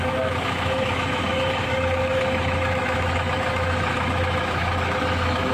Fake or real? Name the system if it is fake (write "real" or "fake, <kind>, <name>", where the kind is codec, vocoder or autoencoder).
fake, autoencoder, DAC-VAE